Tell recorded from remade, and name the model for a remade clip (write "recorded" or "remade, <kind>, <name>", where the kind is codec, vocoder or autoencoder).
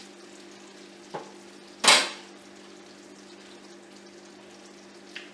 recorded